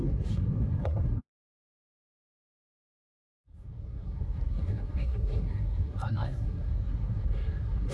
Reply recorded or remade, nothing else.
remade